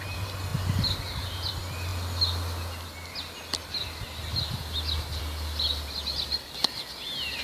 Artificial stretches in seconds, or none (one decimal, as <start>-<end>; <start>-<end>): none